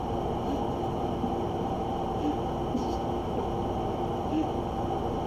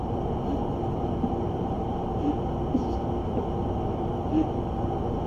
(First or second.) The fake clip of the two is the second